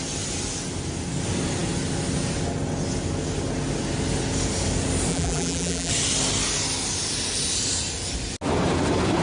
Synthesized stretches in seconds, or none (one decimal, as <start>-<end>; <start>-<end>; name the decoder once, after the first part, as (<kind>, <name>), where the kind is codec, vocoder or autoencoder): 5.1-5.9 (vocoder, BigVGAN v2)